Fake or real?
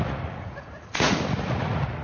fake